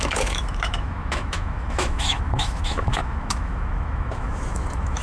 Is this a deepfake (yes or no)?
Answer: yes